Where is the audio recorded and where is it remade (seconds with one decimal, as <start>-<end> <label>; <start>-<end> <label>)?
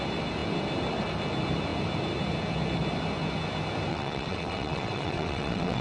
0.0-3.9 recorded; 3.9-5.8 remade